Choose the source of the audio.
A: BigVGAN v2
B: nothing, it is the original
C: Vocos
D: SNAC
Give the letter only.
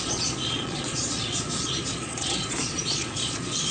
C